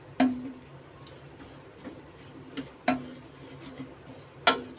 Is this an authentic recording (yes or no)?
yes